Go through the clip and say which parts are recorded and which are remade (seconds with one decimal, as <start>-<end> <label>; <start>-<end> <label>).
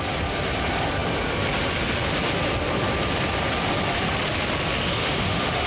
0.0-5.0 recorded; 5.0-5.7 remade